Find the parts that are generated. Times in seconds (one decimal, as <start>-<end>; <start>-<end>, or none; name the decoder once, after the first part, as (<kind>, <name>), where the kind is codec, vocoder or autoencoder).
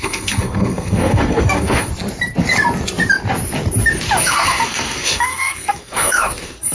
0.0-1.9 (codec, SNAC); 4.2-6.7